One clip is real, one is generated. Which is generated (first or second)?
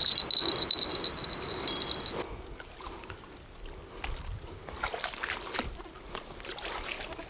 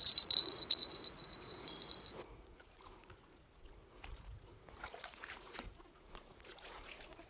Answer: second